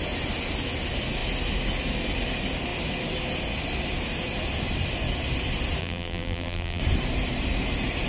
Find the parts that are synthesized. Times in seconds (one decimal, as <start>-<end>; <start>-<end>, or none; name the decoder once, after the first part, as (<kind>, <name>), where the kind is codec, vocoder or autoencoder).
5.8-6.8 (vocoder, BigVGAN v2)